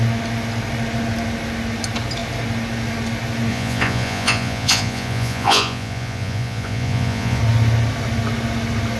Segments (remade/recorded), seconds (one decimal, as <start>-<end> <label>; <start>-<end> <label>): 0.0-3.5 recorded; 3.5-7.4 remade; 7.4-9.0 recorded